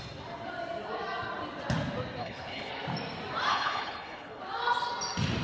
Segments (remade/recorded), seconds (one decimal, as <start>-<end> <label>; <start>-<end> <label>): 0.0-2.2 recorded; 2.2-2.7 remade; 2.7-3.5 recorded; 3.5-4.4 remade; 4.4-5.4 recorded

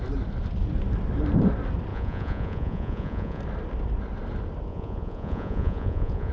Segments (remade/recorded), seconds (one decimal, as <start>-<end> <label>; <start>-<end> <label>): 0.0-1.9 recorded; 1.9-3.4 remade; 3.4-4.7 recorded; 4.7-6.3 remade

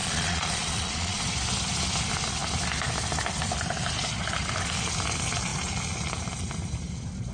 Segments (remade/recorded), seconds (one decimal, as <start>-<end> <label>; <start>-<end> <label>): 0.0-1.2 remade; 1.2-7.3 recorded

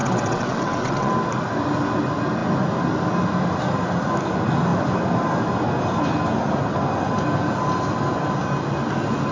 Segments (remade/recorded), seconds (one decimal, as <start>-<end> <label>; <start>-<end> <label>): 0.0-1.1 remade; 1.1-9.3 recorded

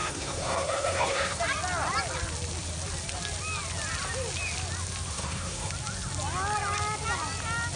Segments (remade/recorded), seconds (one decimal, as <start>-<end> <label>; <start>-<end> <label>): 0.0-1.4 remade; 1.4-5.1 recorded; 5.1-5.7 remade; 5.7-7.8 recorded

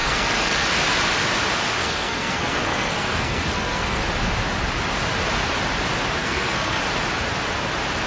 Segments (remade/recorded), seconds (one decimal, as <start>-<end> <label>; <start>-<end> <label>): 0.0-0.7 remade; 0.7-1.8 recorded; 1.8-4.0 remade; 4.0-6.2 recorded; 6.2-6.8 remade; 6.8-8.1 recorded